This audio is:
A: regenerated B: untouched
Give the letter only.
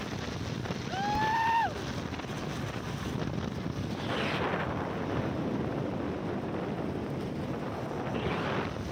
B